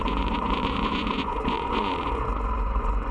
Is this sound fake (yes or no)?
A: yes